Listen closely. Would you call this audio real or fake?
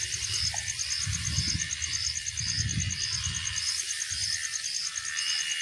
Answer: real